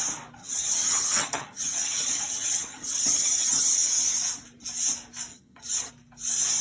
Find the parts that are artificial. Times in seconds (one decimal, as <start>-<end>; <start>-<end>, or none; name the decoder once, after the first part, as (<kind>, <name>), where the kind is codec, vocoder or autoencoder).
0.4-4.0 (vocoder, HiFi-GAN); 5.3-5.9

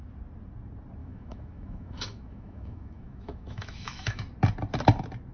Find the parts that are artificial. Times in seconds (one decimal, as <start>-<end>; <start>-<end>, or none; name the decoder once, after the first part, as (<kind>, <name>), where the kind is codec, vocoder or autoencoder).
1.0-4.2 (autoencoder, DAC-VAE)

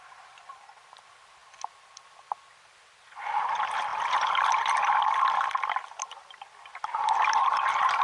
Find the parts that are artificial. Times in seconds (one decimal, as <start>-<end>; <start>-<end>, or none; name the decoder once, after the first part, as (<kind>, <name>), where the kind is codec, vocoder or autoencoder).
none

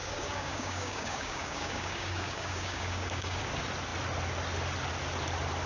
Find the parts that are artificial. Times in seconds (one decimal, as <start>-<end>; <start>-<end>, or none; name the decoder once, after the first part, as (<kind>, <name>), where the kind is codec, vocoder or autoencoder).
0.0-3.4 (codec, DAC)

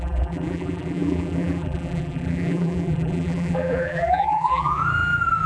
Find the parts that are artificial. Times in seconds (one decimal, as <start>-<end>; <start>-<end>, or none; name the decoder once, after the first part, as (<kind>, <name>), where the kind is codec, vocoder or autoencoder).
0.0-4.8 (vocoder, BigVGAN v2)

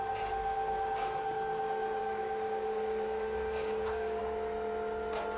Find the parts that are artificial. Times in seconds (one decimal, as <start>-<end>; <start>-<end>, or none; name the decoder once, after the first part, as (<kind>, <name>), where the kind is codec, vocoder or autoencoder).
0.4-1.5 (codec, DAC); 2.0-4.2

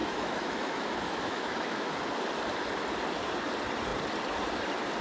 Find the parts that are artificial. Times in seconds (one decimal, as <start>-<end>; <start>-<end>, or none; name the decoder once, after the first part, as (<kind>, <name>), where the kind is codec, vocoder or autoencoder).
0.0-1.9 (autoencoder, DAC-VAE)

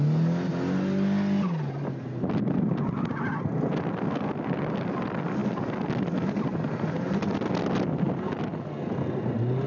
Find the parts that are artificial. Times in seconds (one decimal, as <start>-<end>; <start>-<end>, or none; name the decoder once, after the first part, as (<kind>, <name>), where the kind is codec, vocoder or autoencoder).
none